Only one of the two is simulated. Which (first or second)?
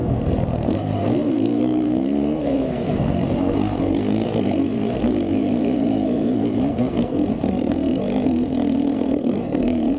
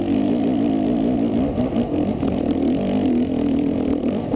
first